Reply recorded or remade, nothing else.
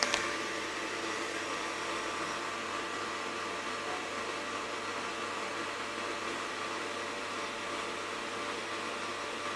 recorded